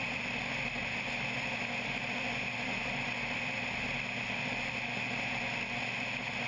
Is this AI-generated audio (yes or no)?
no